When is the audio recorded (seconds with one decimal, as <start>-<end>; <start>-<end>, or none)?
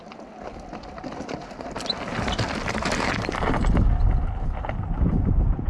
0.0-1.4; 4.8-5.7